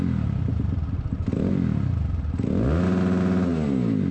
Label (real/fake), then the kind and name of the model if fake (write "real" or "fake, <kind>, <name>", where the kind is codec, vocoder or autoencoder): real